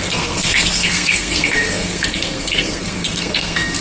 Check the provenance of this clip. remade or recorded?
remade